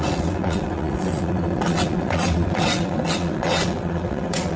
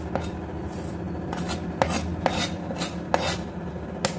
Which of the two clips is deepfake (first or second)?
first